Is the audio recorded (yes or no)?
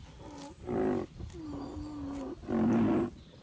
yes